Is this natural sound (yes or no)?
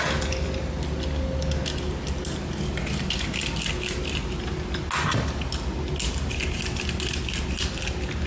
yes